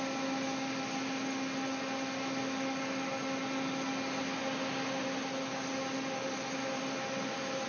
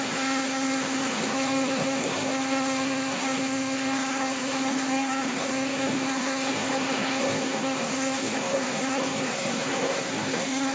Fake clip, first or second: second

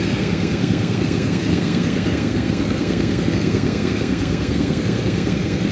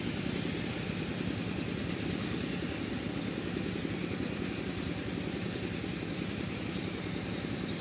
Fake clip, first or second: first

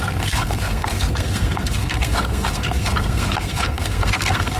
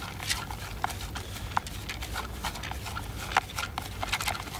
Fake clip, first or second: first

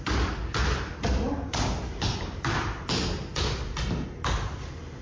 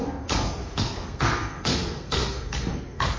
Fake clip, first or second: second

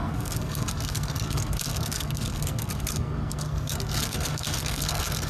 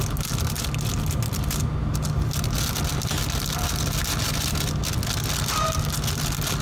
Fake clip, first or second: first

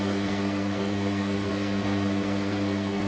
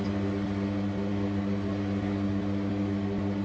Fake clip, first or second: first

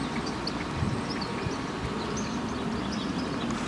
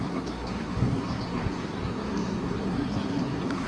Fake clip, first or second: second